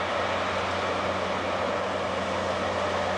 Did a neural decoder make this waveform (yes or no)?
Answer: no